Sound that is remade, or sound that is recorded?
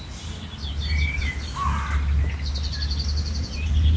recorded